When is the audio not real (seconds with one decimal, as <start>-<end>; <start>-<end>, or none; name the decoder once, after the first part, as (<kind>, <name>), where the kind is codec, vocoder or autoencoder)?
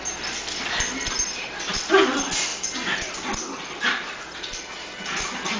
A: none